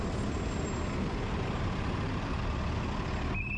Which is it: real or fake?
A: real